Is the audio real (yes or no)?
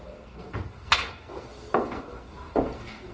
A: no